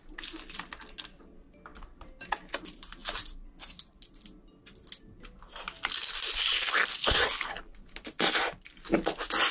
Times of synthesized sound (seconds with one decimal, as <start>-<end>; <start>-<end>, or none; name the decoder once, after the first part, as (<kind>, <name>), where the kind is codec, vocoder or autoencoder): none